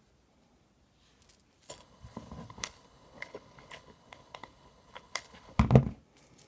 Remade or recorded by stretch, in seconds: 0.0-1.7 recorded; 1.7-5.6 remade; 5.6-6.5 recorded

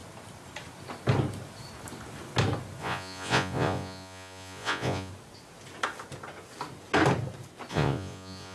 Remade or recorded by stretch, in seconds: 0.0-2.8 recorded; 2.8-5.1 remade; 5.1-7.7 recorded; 7.7-8.5 remade

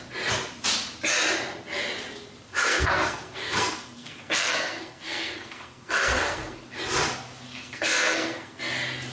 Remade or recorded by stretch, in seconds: 0.0-2.5 recorded; 2.5-6.8 remade; 6.8-7.5 recorded; 7.5-8.6 remade; 8.6-9.1 recorded

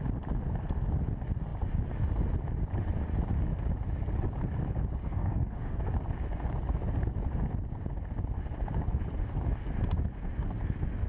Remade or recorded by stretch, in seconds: 0.0-5.0 recorded; 5.0-5.8 remade; 5.8-11.1 recorded